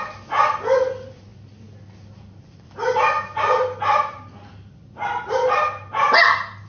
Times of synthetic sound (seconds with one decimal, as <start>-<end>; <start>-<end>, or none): none